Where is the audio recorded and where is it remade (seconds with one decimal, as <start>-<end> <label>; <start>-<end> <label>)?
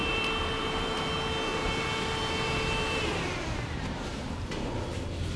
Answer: 0.0-1.1 remade; 1.1-1.5 recorded; 1.5-4.7 remade; 4.7-5.4 recorded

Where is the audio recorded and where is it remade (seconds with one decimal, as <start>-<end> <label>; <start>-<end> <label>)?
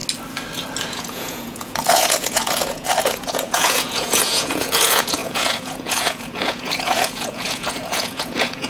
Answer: 0.0-0.9 recorded; 0.9-8.7 remade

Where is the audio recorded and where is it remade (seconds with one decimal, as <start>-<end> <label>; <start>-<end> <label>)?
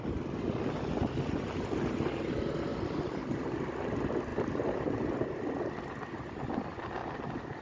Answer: 0.0-2.7 recorded; 2.7-3.2 remade; 3.2-4.3 recorded; 4.3-4.9 remade; 4.9-7.6 recorded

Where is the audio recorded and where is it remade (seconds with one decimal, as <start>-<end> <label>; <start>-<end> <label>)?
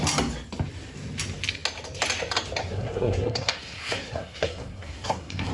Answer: 0.0-2.6 recorded; 2.6-5.5 remade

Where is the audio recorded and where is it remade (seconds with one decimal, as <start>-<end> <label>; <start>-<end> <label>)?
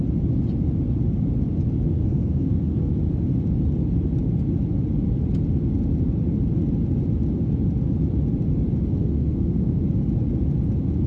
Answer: 0.0-1.9 recorded; 1.9-2.9 remade; 2.9-9.0 recorded; 9.0-9.8 remade; 9.8-11.1 recorded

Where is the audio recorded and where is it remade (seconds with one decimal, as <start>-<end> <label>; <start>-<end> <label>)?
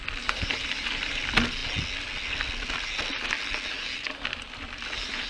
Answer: 0.0-1.6 remade; 1.6-3.7 recorded; 3.7-5.3 remade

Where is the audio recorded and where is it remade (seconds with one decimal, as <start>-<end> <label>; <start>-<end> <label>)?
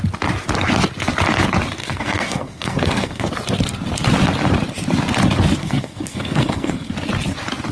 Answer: 0.0-1.8 recorded; 1.8-3.3 remade; 3.3-5.6 recorded; 5.6-6.9 remade; 6.9-7.7 recorded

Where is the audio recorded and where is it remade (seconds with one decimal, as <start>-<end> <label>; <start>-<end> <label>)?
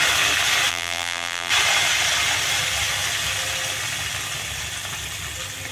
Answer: 0.0-0.7 recorded; 0.7-1.5 remade; 1.5-5.7 recorded